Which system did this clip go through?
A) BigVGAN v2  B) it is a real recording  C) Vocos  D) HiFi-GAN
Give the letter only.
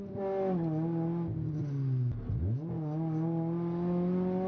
B